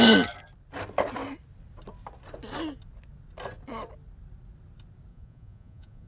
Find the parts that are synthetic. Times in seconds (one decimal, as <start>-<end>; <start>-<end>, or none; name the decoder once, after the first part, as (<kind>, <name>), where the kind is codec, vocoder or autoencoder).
5.1-6.1 (vocoder, Vocos)